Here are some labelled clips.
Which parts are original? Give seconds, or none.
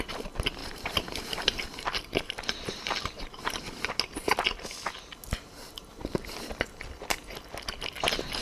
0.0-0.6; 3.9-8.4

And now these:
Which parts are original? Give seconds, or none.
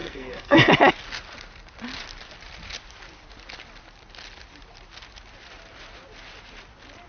0.7-7.1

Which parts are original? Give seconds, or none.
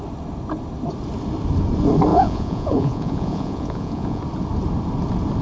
0.0-2.1; 4.2-5.4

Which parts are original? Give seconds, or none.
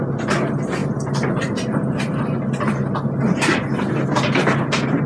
0.0-0.8; 2.5-5.1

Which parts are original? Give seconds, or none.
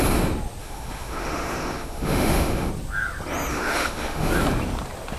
0.0-0.6; 2.7-3.5; 4.3-5.2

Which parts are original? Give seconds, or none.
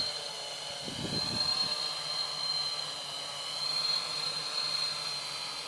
0.0-5.7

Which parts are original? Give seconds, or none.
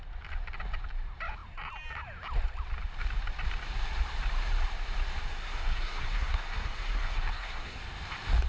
0.0-5.3; 7.8-8.5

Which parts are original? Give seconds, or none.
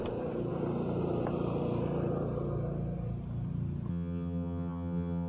0.0-3.9